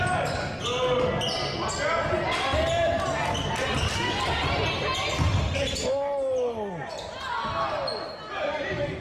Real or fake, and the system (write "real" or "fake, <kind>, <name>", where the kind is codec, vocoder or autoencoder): real